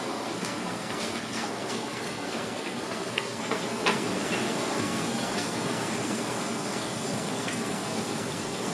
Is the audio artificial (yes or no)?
yes